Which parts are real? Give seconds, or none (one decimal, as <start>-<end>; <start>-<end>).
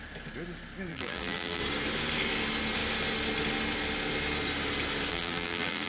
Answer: 0.0-0.9; 1.6-5.1